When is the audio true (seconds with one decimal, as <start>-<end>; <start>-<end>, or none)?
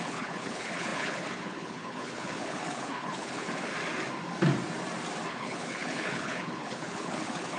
3.7-5.3